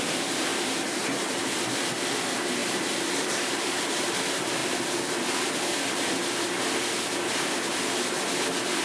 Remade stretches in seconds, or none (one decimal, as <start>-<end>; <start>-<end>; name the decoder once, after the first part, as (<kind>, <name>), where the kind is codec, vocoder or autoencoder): 0.5-1.5 (vocoder, BigVGAN v2); 2.6-4.1